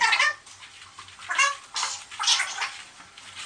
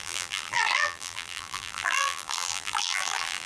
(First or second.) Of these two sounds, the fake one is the second